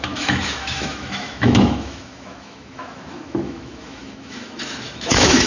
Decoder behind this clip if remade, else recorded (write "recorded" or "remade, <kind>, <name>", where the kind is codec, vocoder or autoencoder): remade, autoencoder, DAC-VAE